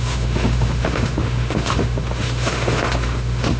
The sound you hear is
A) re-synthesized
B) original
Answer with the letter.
A